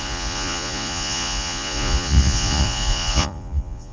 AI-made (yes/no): yes